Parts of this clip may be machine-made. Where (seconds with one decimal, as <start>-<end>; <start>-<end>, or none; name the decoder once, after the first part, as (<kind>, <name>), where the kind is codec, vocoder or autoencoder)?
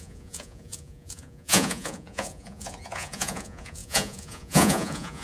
0.0-5.2 (vocoder, Vocos)